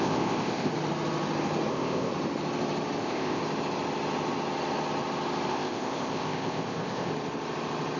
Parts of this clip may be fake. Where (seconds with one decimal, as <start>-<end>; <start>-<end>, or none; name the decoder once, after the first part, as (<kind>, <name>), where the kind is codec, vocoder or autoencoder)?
0.0-0.7 (codec, ZipCodec); 1.7-2.1; 3.0-3.4; 5.5-7.1